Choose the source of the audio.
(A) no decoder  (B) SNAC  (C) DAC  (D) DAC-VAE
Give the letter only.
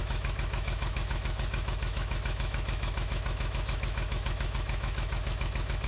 D